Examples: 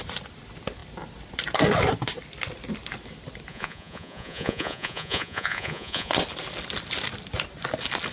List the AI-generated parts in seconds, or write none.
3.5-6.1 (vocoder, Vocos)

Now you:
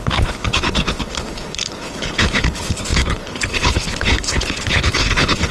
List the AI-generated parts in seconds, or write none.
0.0-5.5 (codec, HILCodec)